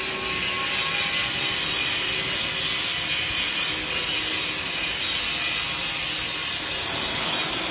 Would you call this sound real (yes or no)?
yes